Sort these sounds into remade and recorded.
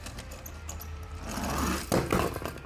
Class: recorded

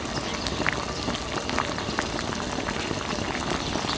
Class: recorded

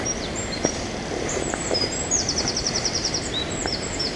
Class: remade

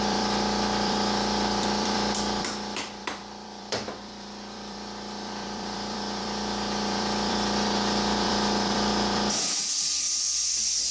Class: remade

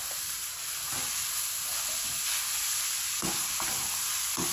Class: recorded